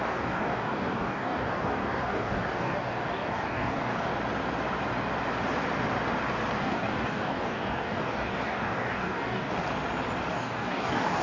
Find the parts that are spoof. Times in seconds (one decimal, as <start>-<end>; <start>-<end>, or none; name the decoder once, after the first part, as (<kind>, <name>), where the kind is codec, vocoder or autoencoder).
0.0-4.1 (codec, DAC); 6.6-9.6; 10.3-11.2